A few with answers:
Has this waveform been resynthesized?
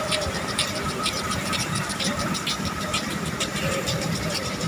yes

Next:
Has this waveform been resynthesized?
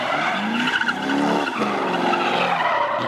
no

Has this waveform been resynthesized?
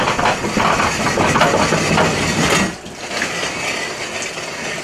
no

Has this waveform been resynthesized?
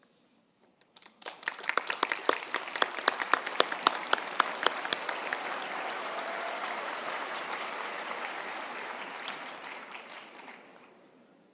yes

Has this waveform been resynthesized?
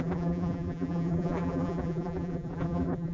yes